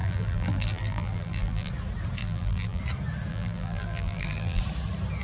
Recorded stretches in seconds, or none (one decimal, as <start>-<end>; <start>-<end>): 1.7-2.2; 2.8-3.3; 4.6-5.2